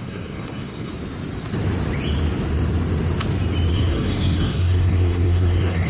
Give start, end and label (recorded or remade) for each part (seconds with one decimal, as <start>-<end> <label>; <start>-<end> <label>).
0.0-0.9 remade; 0.9-3.7 recorded; 3.7-5.9 remade